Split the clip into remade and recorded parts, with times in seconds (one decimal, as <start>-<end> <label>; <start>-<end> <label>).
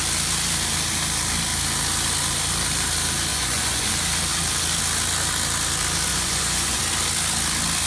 0.0-3.3 recorded; 3.3-3.9 remade; 3.9-6.1 recorded; 6.1-6.8 remade; 6.8-7.9 recorded